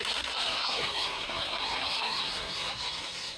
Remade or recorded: remade